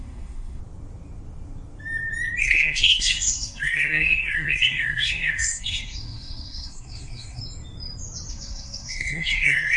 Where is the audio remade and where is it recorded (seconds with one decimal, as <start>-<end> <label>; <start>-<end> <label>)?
0.0-0.6 remade; 0.6-2.4 recorded; 2.4-7.4 remade; 7.4-8.3 recorded; 8.3-9.8 remade